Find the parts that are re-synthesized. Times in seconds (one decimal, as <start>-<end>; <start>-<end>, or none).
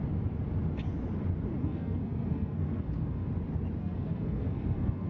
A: 1.6-3.3; 3.8-5.1